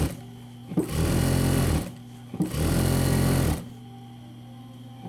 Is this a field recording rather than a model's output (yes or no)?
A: yes